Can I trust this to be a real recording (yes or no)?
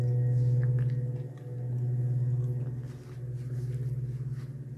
yes